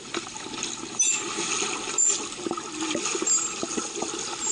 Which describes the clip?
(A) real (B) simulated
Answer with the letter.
A